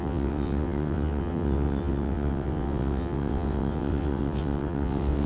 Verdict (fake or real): fake